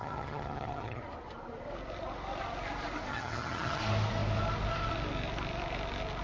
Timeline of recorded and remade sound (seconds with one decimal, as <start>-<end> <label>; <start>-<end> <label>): 0.0-1.0 remade; 1.0-3.1 recorded; 3.1-3.8 remade; 3.8-6.2 recorded

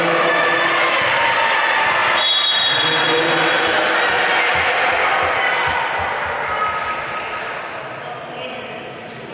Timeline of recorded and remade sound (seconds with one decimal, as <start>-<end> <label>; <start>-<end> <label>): 0.0-9.3 recorded

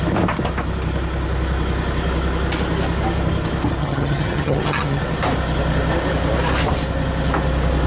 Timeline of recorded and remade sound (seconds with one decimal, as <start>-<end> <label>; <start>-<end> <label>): 0.0-3.8 recorded; 3.8-5.0 remade; 5.0-7.9 recorded

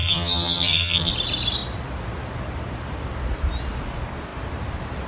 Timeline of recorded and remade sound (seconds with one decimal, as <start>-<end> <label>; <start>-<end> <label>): 0.0-1.1 remade; 1.1-5.1 recorded

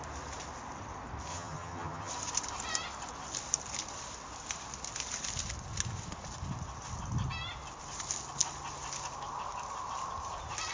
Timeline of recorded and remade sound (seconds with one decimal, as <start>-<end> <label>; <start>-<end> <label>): 0.0-1.3 recorded; 1.3-2.1 remade; 2.1-10.7 recorded